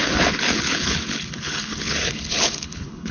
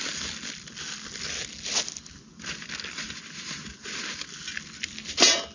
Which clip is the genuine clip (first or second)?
second